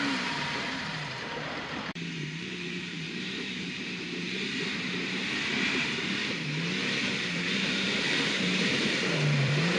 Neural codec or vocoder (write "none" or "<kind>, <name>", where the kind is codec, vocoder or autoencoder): vocoder, BigVGAN v2